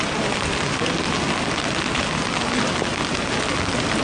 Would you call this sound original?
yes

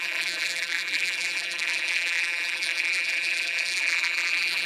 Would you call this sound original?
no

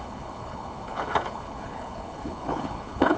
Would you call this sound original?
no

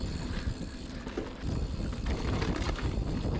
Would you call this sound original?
yes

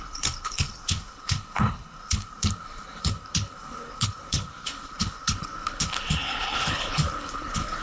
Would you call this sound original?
no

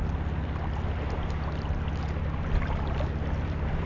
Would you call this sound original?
yes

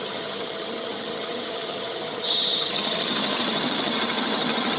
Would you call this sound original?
no